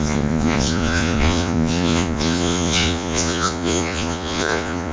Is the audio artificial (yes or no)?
yes